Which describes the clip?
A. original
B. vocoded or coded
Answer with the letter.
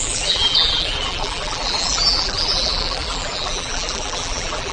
B